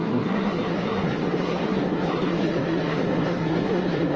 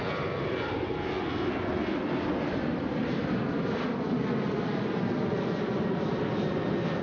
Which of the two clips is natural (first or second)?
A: second